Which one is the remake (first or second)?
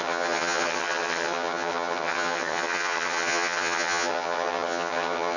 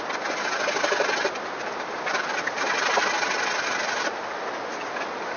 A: first